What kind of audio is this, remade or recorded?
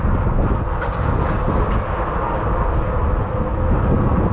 recorded